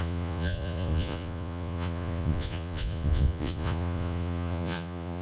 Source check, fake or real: fake